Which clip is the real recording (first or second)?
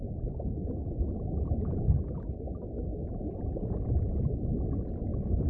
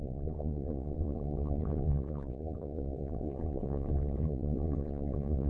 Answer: first